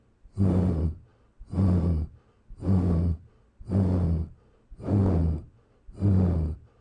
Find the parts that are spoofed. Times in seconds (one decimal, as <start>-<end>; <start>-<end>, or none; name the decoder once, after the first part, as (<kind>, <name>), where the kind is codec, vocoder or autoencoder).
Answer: none